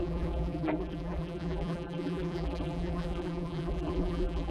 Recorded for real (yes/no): no